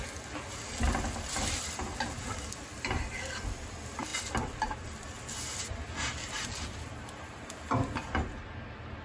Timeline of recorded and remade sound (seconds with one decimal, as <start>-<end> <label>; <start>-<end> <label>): 0.0-9.0 recorded

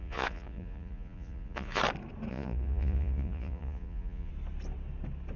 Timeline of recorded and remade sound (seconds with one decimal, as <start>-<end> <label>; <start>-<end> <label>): 0.0-1.8 remade; 1.8-2.3 recorded; 2.3-4.3 remade; 4.3-5.4 recorded

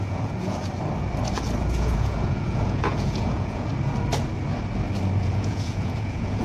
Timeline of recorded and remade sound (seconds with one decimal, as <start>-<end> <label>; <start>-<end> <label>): 0.0-0.6 remade; 0.6-1.6 recorded; 1.6-3.7 remade; 3.7-5.2 recorded; 5.2-6.4 remade